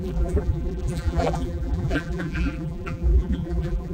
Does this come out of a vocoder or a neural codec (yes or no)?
yes